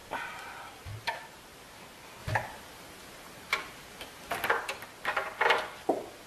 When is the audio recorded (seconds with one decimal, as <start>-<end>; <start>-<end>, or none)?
0.0-2.2; 4.5-6.3